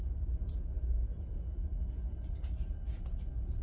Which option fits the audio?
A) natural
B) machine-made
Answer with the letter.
A